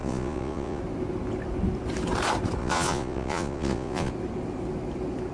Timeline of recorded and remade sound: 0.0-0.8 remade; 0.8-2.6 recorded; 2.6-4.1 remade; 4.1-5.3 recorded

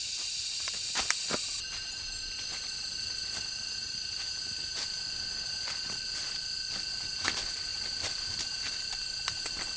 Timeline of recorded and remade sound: 0.0-9.8 recorded

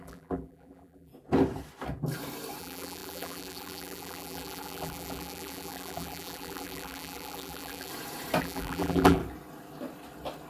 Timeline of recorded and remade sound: 0.0-1.1 remade; 1.1-2.6 recorded; 2.6-7.9 remade; 7.9-8.4 recorded; 8.4-9.2 remade; 9.2-10.5 recorded